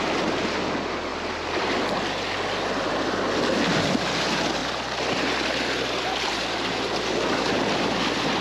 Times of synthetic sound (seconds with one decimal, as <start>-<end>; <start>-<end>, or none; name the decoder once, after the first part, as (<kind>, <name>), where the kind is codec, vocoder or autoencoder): 1.1-1.8 (vocoder, BigVGAN v2); 4.6-8.4